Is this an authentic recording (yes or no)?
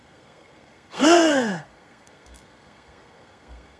no